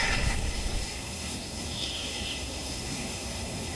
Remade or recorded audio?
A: remade